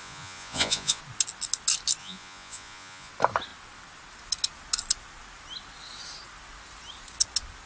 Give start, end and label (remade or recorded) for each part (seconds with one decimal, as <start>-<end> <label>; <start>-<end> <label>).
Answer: 0.0-1.0 remade; 1.0-2.0 recorded; 2.0-3.1 remade; 3.1-7.7 recorded